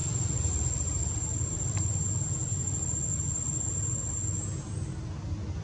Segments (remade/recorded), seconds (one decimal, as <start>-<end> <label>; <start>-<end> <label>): 0.0-5.6 recorded